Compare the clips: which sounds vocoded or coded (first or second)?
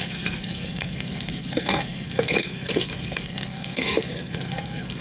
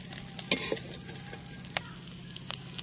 first